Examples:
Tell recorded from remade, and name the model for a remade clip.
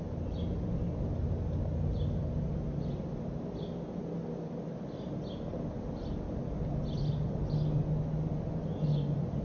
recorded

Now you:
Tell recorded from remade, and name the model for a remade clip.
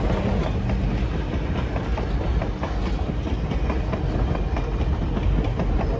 recorded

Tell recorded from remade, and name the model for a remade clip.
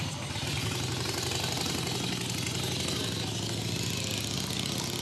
recorded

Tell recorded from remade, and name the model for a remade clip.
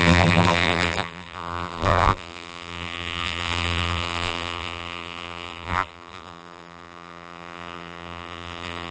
remade, vocoder, BigVGAN v2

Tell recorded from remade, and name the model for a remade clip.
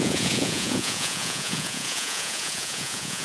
remade, vocoder, Vocos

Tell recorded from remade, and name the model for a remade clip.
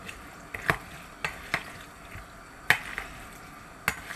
recorded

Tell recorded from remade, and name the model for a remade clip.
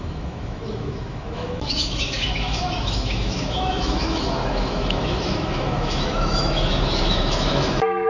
remade, autoencoder, DAC-VAE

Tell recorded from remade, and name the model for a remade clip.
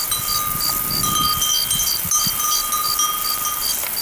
recorded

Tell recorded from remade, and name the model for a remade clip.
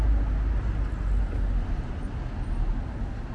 recorded